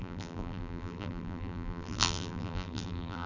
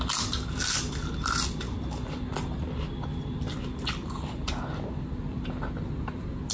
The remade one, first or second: first